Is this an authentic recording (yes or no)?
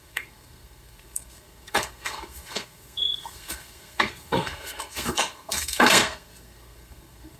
no